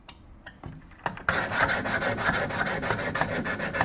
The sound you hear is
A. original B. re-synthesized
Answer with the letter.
A